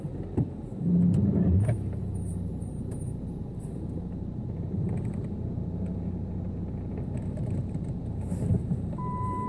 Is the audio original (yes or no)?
no